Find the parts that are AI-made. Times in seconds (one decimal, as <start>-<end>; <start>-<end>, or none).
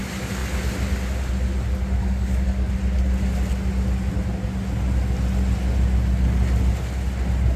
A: 2.0-2.7